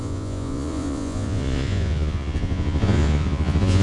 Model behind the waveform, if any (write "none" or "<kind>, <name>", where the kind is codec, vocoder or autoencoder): vocoder, Vocos